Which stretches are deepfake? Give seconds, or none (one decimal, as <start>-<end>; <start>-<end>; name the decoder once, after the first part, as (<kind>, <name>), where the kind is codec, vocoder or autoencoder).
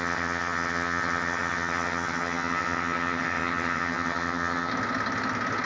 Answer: 0.0-4.7 (vocoder, HiFi-GAN)